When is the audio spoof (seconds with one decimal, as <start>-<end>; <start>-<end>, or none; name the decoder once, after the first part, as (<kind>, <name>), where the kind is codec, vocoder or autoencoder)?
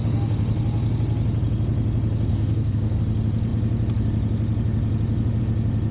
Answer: 2.3-3.0 (codec, SNAC)